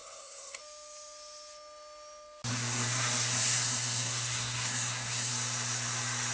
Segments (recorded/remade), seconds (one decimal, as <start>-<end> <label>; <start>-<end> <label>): 0.0-0.6 remade; 0.6-2.5 recorded; 2.5-5.3 remade; 5.3-6.3 recorded